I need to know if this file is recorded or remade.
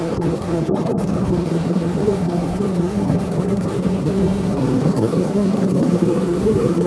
remade